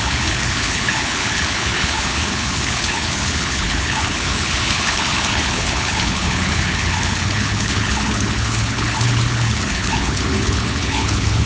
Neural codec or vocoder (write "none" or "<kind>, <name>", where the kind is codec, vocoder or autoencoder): codec, HILCodec